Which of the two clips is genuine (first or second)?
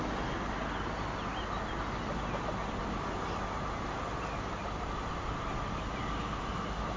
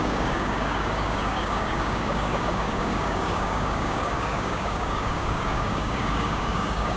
first